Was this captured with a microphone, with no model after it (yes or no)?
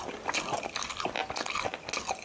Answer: yes